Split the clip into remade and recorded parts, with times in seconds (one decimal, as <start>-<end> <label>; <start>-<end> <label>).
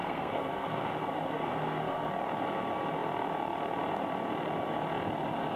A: 0.0-2.1 remade; 2.1-5.6 recorded